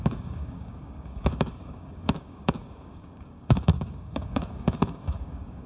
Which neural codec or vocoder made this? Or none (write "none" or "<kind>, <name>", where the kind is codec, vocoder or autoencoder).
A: codec, DAC